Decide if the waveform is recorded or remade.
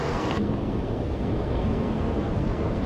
remade